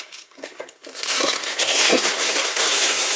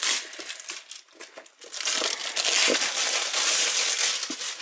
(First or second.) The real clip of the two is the second